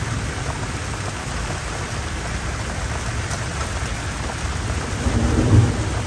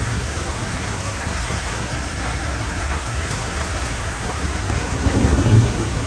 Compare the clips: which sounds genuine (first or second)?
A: first